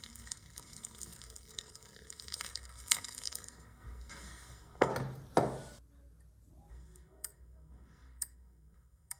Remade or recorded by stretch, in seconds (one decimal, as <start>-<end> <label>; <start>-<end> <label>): 0.0-4.9 remade; 4.9-6.7 recorded; 6.7-9.2 remade